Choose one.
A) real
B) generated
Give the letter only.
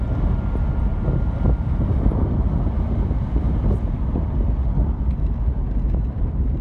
A